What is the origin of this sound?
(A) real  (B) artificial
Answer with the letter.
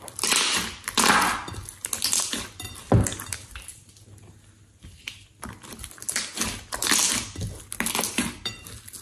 A